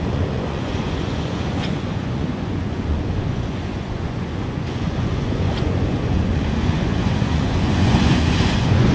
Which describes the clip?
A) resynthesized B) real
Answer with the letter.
A